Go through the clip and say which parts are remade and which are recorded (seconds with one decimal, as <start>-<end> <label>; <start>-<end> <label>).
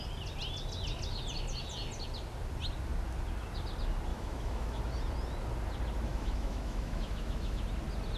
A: 0.0-4.1 recorded; 4.1-4.8 remade; 4.8-6.1 recorded; 6.1-7.6 remade; 7.6-8.2 recorded